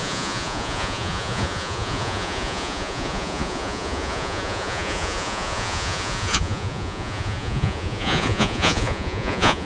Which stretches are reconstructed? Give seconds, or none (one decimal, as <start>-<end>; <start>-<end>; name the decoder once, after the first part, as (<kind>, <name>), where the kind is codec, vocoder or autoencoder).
0.0-9.7 (vocoder, Vocos)